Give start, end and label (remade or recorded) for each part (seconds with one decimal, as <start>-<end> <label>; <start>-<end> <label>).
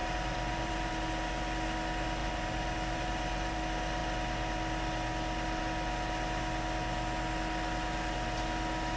0.0-0.9 remade; 0.9-2.2 recorded; 2.2-3.6 remade; 3.6-9.0 recorded